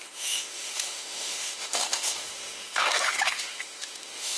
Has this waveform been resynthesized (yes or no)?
yes